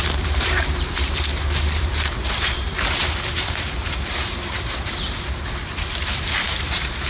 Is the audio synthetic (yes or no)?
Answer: yes